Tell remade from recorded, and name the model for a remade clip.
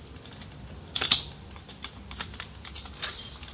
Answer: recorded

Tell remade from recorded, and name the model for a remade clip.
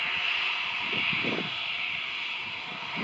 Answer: recorded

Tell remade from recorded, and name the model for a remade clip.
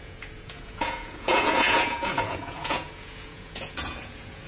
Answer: remade, vocoder, Vocos